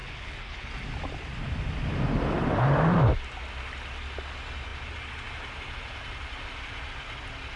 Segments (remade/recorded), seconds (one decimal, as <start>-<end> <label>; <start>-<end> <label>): 0.0-0.7 remade; 0.7-7.6 recorded